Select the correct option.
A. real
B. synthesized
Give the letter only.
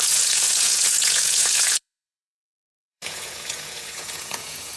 B